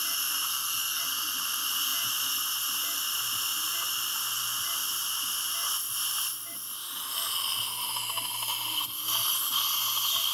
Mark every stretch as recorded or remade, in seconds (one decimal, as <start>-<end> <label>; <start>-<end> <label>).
0.0-0.5 recorded; 0.5-1.0 remade; 1.0-10.3 recorded